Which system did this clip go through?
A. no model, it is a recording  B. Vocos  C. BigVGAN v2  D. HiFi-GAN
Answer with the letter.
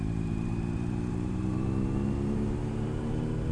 C